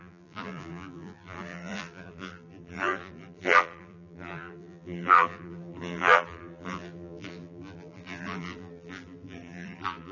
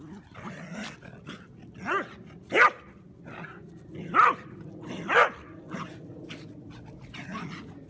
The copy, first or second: first